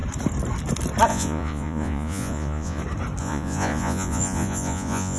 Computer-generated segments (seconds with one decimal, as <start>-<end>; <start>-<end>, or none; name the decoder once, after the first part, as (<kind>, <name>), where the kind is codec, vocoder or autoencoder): 1.1-2.8 (vocoder, Vocos); 3.2-5.2